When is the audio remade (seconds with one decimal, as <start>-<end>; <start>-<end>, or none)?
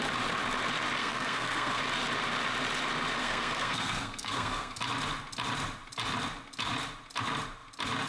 1.0-1.8; 3.2-4.8